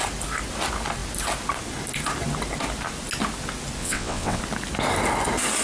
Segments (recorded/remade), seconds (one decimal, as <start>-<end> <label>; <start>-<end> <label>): 0.0-3.8 recorded; 3.8-4.4 remade; 4.4-5.6 recorded